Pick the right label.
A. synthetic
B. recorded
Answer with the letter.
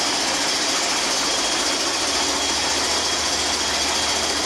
B